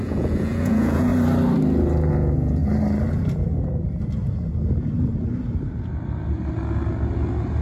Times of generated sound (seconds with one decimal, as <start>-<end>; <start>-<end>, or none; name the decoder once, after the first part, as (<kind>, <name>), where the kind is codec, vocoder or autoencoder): 0.0-1.1 (vocoder, Vocos); 2.1-2.6